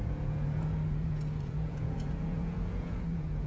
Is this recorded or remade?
remade